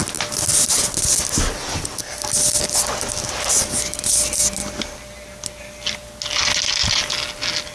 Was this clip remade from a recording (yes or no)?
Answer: no